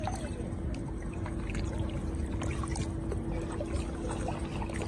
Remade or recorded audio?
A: recorded